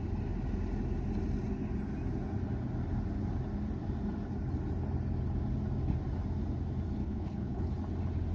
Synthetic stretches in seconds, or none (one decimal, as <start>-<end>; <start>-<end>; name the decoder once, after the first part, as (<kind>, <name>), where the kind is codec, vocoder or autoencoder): 7.0-7.7 (codec, HILCodec)